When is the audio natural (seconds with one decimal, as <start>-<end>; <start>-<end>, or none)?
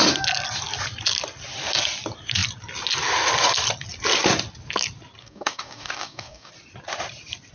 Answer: 0.0-5.2; 6.5-7.5